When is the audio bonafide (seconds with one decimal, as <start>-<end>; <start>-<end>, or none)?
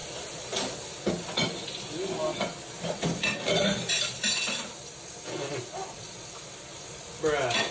0.0-7.7